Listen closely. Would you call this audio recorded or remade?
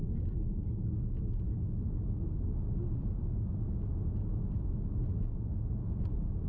recorded